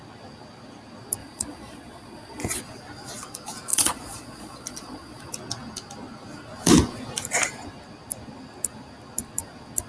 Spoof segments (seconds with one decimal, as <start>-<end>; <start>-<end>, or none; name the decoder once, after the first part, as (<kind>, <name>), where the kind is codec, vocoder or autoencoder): 1.2-2.6 (vocoder, Vocos); 3.7-5.3